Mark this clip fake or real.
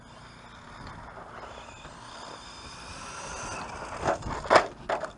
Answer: real